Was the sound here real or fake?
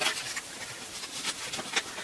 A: real